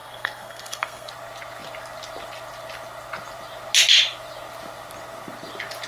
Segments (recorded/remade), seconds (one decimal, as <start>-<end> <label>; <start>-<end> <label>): 0.0-1.1 remade; 1.1-5.9 recorded